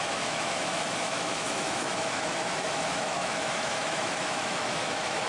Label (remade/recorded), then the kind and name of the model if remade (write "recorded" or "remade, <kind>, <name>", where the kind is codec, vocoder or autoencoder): remade, autoencoder, DAC-VAE